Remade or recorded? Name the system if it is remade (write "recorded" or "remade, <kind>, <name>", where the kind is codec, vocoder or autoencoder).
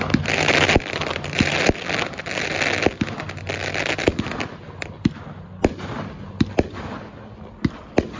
recorded